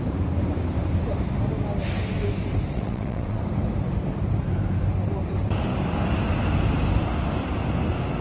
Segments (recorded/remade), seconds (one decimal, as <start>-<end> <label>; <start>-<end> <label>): 0.0-2.7 recorded; 2.7-3.4 remade; 3.4-8.2 recorded